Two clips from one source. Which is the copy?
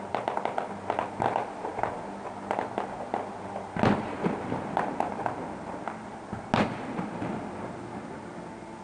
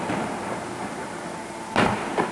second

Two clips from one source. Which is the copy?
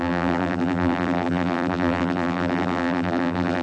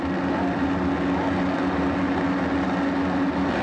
first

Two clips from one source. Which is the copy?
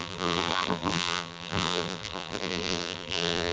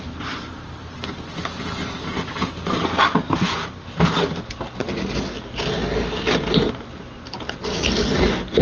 first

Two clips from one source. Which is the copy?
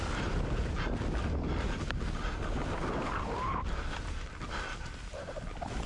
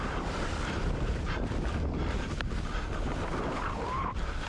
second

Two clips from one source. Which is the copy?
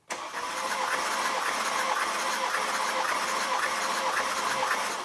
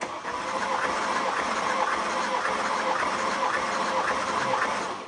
second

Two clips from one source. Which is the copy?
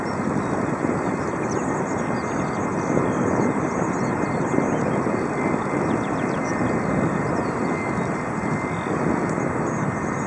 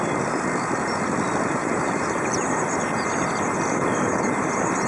second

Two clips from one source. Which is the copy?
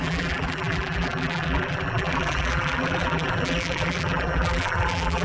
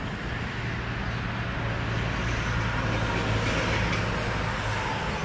first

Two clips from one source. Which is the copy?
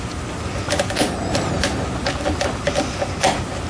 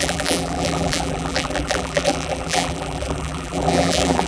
second